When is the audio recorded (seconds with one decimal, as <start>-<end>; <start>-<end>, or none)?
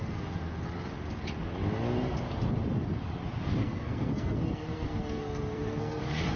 0.0-3.6; 6.0-6.4